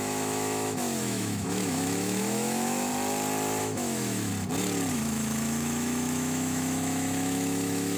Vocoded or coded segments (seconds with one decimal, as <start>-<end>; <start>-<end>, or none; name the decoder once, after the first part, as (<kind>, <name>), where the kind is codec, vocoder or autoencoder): 0.0-2.9 (autoencoder, DAC-VAE); 3.6-4.3; 4.9-8.0